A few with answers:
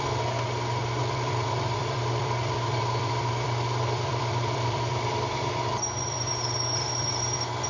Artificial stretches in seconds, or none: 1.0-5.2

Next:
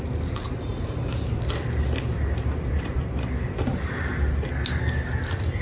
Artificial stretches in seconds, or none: 0.7-4.1

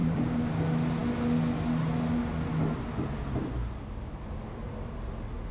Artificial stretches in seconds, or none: 0.0-0.6